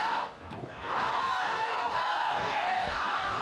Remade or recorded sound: remade